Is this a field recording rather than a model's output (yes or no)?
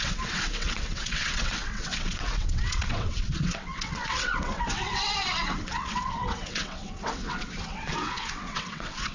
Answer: no